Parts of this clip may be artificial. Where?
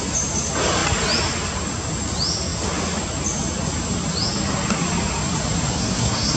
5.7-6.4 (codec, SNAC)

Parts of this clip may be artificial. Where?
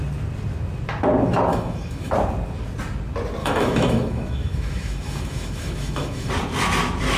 1.5-2.1 (autoencoder, DAC-VAE); 3.4-6.3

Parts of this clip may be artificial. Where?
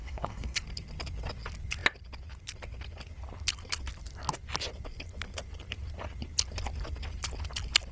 0.0-0.6 (codec, SNAC)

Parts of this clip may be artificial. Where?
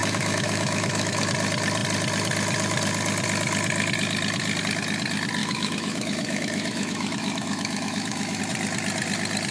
0.0-1.2 (autoencoder, DAC-VAE); 5.4-8.4